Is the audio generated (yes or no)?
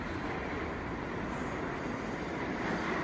no